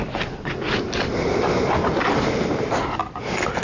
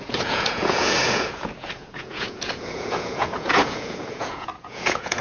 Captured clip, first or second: first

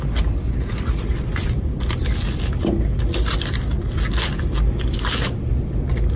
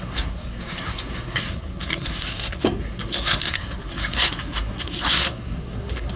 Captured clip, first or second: first